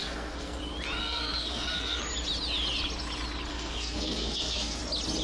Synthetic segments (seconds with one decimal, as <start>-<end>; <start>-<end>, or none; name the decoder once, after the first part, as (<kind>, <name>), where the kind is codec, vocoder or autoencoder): 0.0-0.6 (codec, SNAC); 1.0-2.0; 3.5-4.8